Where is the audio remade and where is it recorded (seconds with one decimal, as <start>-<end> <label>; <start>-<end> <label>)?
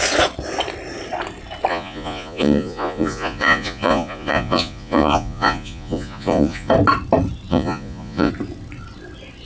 0.0-1.7 recorded; 1.7-6.7 remade; 6.7-7.5 recorded; 7.5-8.3 remade; 8.3-9.5 recorded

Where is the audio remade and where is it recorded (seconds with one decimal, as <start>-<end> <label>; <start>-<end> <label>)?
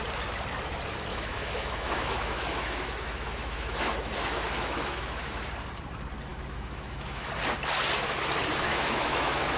0.0-1.1 recorded; 1.1-5.5 remade; 5.5-6.3 recorded; 6.3-7.3 remade; 7.3-8.7 recorded; 8.7-9.6 remade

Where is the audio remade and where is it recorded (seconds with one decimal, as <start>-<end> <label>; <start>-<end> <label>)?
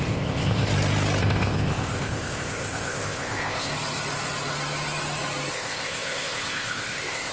0.0-0.7 remade; 0.7-1.2 recorded; 1.2-3.7 remade; 3.7-5.5 recorded; 5.5-7.3 remade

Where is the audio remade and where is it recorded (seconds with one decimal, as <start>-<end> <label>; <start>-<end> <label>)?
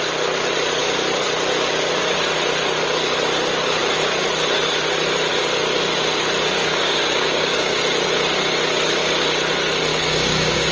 0.0-6.6 recorded; 6.6-7.8 remade; 7.8-9.9 recorded; 9.9-10.7 remade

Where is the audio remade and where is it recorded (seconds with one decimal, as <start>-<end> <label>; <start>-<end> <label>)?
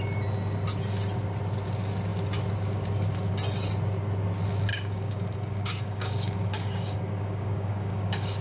0.0-4.7 recorded; 4.7-8.4 remade